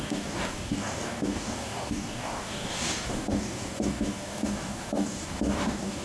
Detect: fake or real fake